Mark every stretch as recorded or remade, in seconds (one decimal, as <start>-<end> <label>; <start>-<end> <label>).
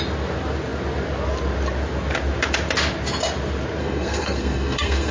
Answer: 0.0-3.8 recorded; 3.8-5.1 remade